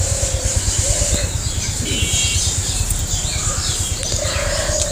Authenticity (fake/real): fake